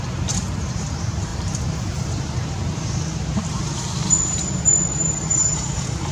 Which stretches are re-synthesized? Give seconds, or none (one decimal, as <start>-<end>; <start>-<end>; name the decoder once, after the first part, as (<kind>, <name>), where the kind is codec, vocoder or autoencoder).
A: 0.0-6.1 (vocoder, BigVGAN v2)